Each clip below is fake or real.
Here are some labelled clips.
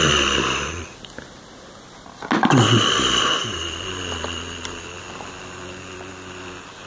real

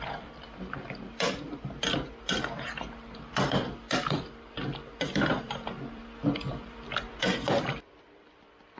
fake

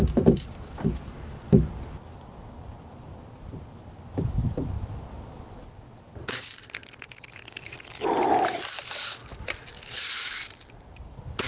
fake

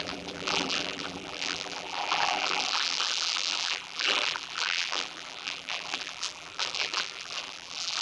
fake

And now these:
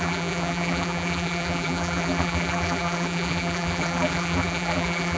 fake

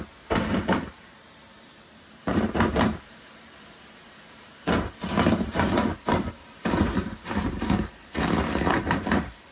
fake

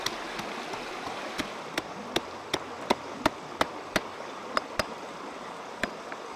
real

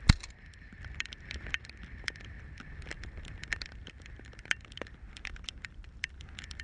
fake